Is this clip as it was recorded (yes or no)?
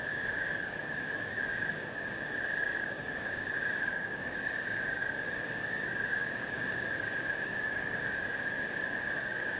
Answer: no